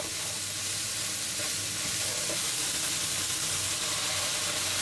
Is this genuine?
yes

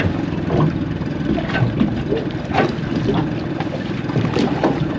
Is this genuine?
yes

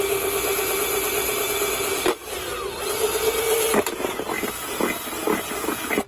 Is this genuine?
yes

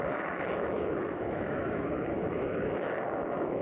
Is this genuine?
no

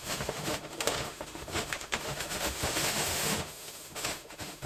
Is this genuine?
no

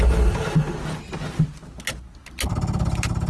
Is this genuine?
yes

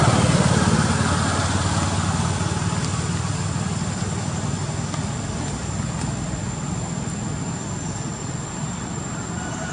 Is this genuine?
yes